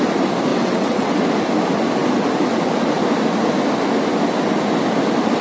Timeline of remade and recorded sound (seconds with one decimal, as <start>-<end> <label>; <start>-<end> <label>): 0.0-0.5 recorded; 0.5-1.2 remade; 1.2-5.4 recorded